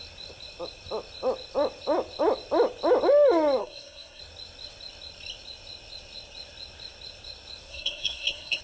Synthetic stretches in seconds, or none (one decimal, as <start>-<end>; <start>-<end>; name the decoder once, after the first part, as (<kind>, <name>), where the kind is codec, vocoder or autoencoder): 3.6-4.2 (codec, SNAC); 7.7-8.6